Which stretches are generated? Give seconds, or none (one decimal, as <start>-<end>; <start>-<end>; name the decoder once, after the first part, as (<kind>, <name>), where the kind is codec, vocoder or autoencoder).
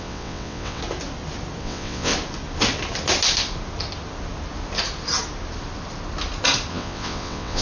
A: 0.0-0.8 (vocoder, WaveNeXt); 1.6-2.1; 6.7-7.6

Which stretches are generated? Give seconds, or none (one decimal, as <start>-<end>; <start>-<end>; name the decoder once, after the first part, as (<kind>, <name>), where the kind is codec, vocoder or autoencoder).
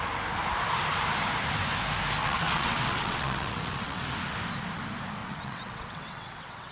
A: 2.2-4.0 (vocoder, WaveNeXt); 5.2-6.7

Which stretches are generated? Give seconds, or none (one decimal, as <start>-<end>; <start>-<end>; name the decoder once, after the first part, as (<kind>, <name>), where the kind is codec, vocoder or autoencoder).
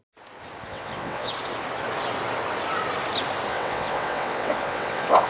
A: 0.7-1.3 (vocoder, WaveNeXt); 3.5-5.3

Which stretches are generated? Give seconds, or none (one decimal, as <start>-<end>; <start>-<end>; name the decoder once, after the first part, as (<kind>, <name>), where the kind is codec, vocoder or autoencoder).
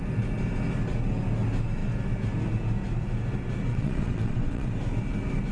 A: 3.7-4.7 (vocoder, WaveNeXt)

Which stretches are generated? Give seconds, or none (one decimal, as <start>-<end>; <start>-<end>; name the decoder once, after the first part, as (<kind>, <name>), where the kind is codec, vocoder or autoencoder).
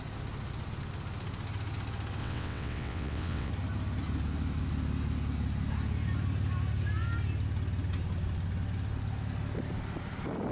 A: 2.2-3.5 (vocoder, WaveNeXt)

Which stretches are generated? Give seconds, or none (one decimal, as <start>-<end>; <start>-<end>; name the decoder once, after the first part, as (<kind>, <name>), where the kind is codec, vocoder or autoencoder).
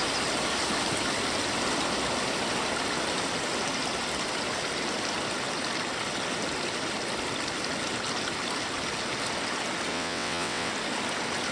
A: 9.9-10.7 (vocoder, WaveNeXt)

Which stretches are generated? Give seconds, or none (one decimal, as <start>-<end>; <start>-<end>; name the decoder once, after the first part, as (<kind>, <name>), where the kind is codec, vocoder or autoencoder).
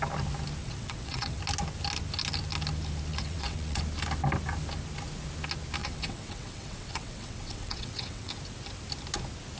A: 0.6-1.4 (vocoder, WaveNeXt); 3.1-3.8; 5.8-8.3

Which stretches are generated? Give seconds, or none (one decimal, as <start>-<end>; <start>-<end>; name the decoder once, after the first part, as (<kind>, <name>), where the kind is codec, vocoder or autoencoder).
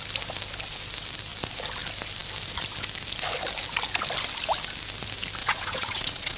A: 5.4-6.4 (vocoder, WaveNeXt)